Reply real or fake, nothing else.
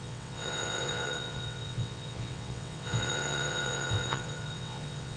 fake